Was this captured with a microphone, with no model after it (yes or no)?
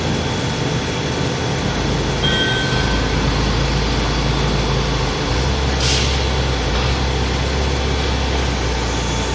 yes